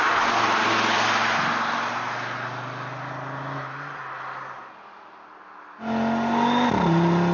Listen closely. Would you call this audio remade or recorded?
recorded